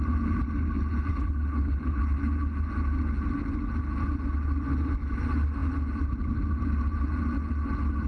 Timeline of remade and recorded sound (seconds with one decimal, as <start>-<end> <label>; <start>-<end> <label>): 0.0-1.1 recorded; 1.1-2.0 remade; 2.0-8.1 recorded